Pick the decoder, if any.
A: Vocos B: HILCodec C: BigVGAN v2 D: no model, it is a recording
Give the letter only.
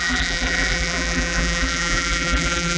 C